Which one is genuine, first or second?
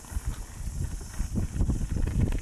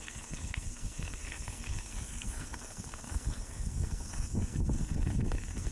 first